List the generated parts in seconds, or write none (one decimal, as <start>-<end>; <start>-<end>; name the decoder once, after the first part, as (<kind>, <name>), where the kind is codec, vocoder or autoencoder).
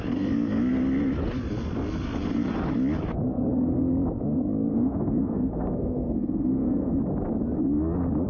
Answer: 4.7-7.0 (codec, SNAC)